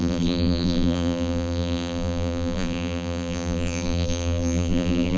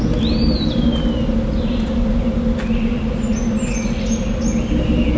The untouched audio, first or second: second